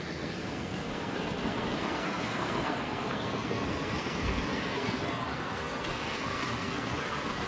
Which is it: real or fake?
fake